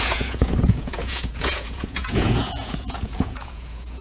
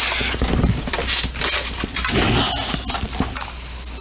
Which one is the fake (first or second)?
first